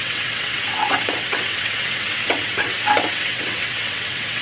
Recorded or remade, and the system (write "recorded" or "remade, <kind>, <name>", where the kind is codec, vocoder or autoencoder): remade, vocoder, WaveNeXt